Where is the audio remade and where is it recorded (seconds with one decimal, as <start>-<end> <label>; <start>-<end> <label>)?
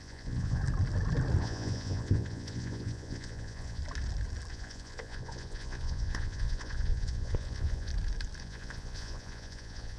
0.0-0.6 remade; 0.6-1.4 recorded; 1.4-3.8 remade; 3.8-4.5 recorded; 4.5-7.9 remade; 7.9-8.4 recorded; 8.4-10.0 remade